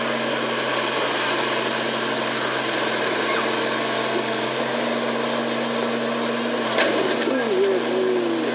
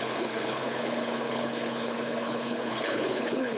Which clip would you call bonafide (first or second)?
first